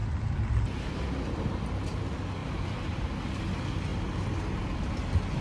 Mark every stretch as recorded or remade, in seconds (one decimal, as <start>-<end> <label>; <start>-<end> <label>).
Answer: 0.0-2.4 recorded; 2.4-3.1 remade; 3.1-5.4 recorded